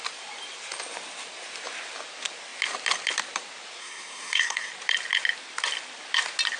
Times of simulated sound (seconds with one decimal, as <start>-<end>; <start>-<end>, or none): 3.8-4.7